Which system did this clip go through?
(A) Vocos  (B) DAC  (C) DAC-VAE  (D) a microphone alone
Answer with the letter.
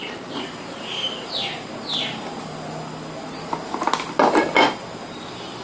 D